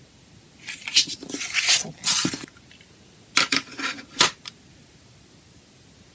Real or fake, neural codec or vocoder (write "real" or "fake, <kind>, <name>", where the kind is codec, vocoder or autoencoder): real